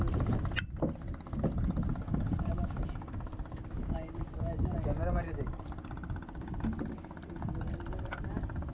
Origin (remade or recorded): recorded